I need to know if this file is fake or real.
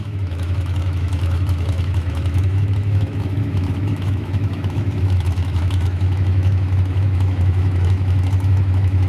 fake